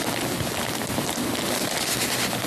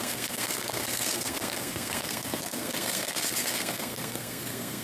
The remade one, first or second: second